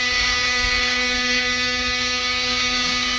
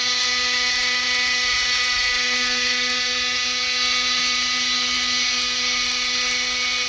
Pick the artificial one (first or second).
first